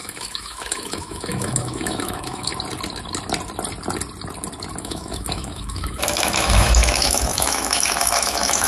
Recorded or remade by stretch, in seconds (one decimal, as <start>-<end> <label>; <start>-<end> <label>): 0.0-2.5 remade; 2.5-4.8 recorded; 4.8-8.7 remade